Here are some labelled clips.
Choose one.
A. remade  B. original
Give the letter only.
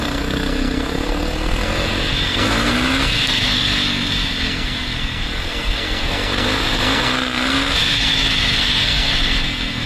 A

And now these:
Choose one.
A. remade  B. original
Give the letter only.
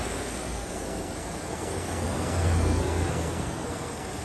A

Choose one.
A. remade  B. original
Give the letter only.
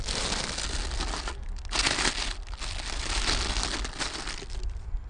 B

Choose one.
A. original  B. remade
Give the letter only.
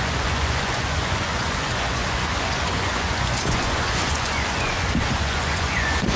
B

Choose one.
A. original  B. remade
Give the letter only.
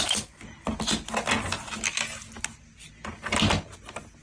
A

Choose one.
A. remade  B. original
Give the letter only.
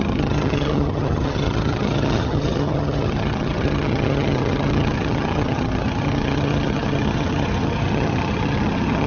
A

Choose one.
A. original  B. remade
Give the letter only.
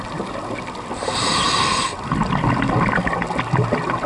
A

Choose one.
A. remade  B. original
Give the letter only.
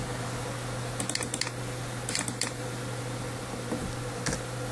B